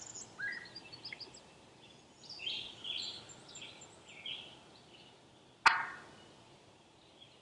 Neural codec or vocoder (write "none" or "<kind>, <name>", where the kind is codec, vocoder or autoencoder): none